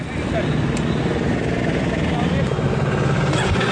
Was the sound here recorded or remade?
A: recorded